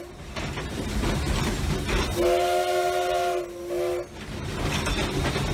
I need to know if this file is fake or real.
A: real